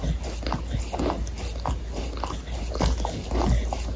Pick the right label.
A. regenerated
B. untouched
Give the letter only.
B